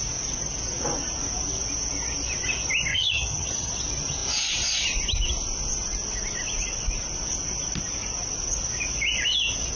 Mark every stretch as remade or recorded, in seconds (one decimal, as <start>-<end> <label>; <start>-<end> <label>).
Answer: 0.0-2.9 recorded; 2.9-3.7 remade; 3.7-9.8 recorded